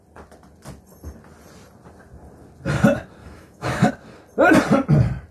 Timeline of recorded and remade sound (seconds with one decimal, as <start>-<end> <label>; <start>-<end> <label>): 0.0-3.2 recorded; 3.2-3.9 remade; 3.9-5.3 recorded